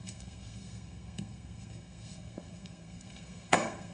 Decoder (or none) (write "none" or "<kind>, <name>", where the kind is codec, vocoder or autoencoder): codec, SNAC